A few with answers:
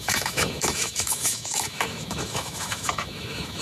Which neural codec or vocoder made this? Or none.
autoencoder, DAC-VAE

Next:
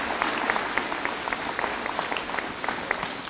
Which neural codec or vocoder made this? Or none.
none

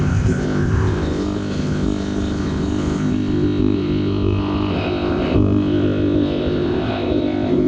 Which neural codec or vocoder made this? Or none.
codec, ZipCodec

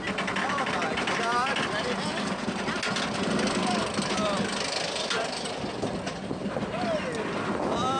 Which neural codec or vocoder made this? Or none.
none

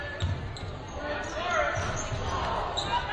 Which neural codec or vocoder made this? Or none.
none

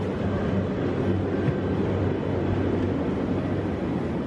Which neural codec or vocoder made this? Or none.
none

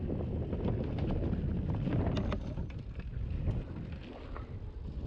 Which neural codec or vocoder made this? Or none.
none